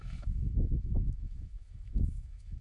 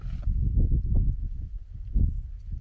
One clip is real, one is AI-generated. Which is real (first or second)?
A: second